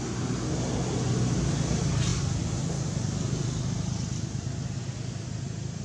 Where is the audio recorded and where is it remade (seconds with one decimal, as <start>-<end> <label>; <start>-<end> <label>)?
0.0-5.8 recorded

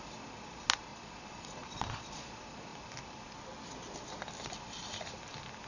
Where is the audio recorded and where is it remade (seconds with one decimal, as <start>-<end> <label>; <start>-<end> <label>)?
0.0-0.9 recorded; 0.9-2.3 remade; 2.3-5.7 recorded

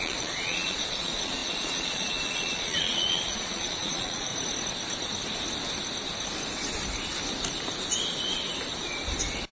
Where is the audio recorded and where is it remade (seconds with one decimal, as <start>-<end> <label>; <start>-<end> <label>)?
0.0-4.3 remade; 4.3-9.5 recorded